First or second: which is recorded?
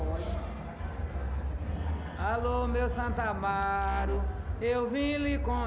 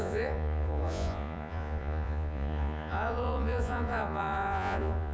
first